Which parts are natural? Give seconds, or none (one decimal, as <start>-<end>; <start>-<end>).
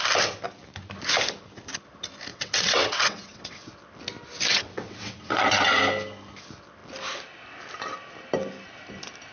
0.0-2.3; 3.7-4.5; 5.8-9.3